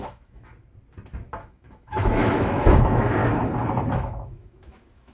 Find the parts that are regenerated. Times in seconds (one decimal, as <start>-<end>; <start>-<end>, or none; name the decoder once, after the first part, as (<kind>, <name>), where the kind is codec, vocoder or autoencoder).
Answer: 0.0-0.5 (autoencoder, DAC-VAE); 1.4-3.2; 3.9-5.1